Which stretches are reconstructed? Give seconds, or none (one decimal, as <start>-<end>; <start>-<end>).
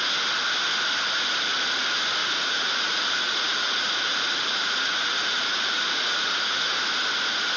2.2-6.8